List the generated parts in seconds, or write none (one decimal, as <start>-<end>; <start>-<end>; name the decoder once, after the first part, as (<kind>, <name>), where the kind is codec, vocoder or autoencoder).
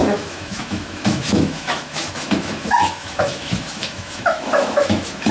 0.0-5.3 (autoencoder, DAC-VAE)